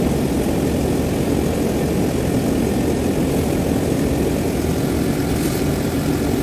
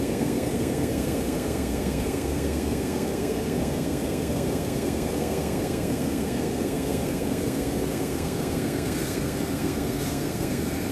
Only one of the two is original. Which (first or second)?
first